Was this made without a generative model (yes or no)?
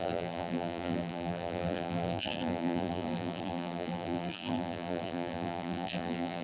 no